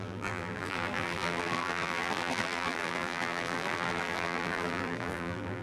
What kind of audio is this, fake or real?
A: fake